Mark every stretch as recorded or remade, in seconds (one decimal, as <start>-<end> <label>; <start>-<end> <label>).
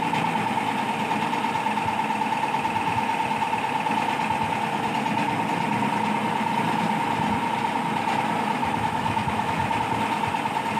0.0-8.6 recorded; 8.6-9.8 remade; 9.8-10.8 recorded